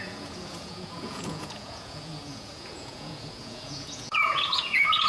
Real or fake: fake